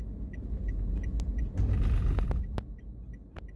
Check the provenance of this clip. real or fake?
real